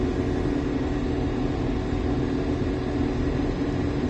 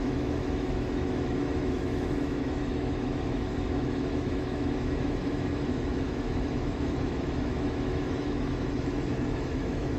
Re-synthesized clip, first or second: second